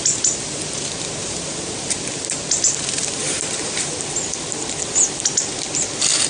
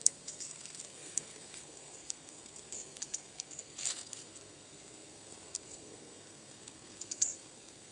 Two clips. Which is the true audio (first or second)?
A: first